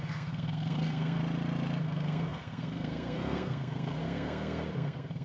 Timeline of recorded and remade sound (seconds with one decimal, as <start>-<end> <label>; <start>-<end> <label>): 0.0-1.2 remade; 1.2-1.8 recorded; 1.8-5.2 remade